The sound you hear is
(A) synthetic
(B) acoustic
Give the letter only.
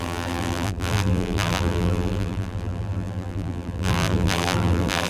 A